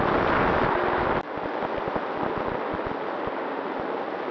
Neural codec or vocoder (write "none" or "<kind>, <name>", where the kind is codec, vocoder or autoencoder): none